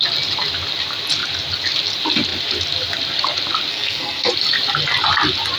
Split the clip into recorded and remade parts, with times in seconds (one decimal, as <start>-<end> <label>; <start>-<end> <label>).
0.0-3.7 recorded; 3.7-4.3 remade; 4.3-5.6 recorded